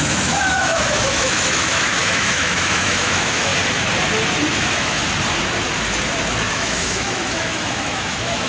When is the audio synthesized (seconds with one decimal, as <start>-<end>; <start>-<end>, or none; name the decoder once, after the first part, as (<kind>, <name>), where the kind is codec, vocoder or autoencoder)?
0.0-3.5 (autoencoder, DAC-VAE); 4.5-5.0; 6.5-8.5